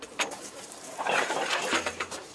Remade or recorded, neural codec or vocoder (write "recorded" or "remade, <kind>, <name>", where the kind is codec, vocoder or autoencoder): remade, vocoder, BigVGAN v2